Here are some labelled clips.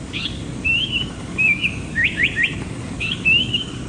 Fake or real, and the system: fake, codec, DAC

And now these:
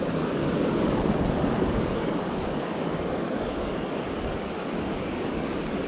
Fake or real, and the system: fake, codec, DAC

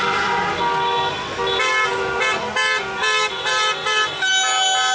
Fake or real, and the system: real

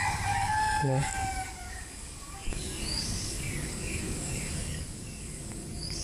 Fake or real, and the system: fake, codec, DAC